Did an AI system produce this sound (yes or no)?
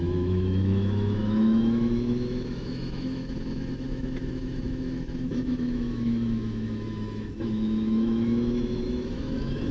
yes